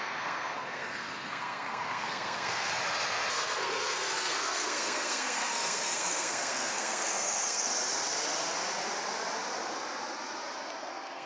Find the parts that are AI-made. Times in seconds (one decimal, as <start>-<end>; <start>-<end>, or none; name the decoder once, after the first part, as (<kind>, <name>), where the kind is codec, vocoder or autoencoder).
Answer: 0.0-2.7 (codec, SNAC); 3.3-7.7; 10.8-11.3